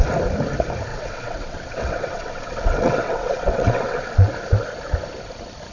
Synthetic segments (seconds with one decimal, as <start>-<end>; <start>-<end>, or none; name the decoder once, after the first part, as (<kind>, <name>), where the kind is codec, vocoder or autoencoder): 0.9-4.3 (vocoder, WaveNeXt)